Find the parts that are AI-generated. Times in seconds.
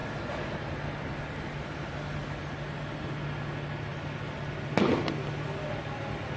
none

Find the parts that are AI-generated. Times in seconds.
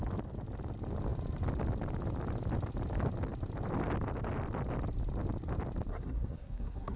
5.9-7.0 (codec, SNAC)